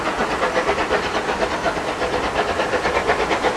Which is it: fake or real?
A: real